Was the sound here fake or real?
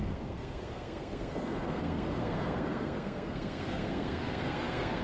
fake